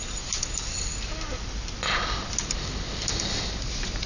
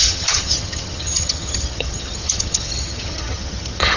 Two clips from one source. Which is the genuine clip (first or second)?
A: first